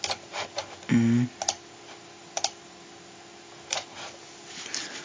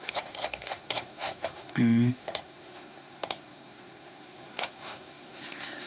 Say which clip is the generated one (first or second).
second